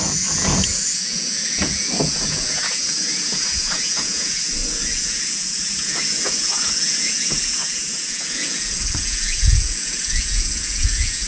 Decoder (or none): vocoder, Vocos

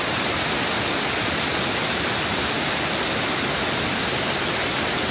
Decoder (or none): none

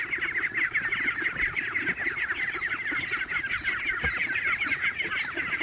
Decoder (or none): none